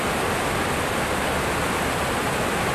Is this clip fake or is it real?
real